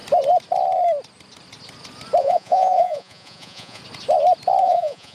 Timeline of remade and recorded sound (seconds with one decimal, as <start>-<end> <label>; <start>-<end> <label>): 0.0-2.2 recorded; 2.2-3.8 remade; 3.8-4.6 recorded; 4.6-5.1 remade